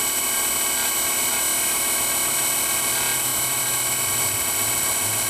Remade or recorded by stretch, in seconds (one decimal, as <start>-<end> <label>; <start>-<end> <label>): 0.0-5.3 recorded